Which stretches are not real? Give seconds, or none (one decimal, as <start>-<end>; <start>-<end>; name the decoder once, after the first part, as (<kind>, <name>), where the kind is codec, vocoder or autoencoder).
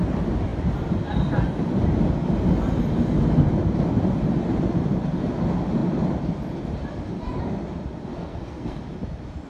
8.1-8.8 (codec, SNAC)